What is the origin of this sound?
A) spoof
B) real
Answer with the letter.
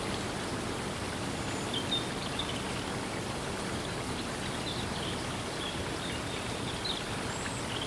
B